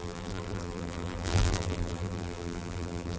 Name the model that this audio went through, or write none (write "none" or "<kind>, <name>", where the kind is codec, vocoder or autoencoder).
vocoder, BigVGAN v2